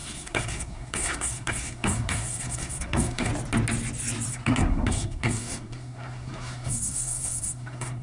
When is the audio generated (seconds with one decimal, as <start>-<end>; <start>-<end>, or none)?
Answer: 0.0-3.3; 4.3-8.0